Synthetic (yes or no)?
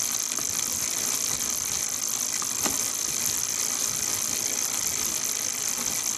no